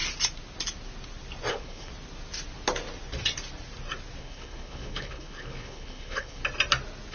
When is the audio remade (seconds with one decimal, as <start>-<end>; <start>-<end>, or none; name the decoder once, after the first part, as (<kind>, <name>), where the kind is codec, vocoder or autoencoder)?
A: 1.5-1.9 (codec, HILCodec); 4.2-6.4